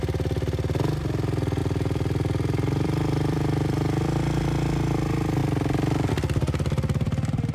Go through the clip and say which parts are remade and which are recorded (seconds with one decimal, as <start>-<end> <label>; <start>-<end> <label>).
0.0-1.6 recorded; 1.6-4.0 remade; 4.0-7.5 recorded